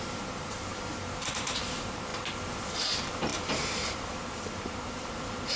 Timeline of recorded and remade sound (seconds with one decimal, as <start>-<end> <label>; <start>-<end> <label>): 0.0-2.1 remade; 2.1-2.7 recorded; 2.7-5.6 remade